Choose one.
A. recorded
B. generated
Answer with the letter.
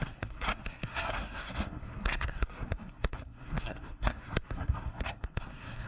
B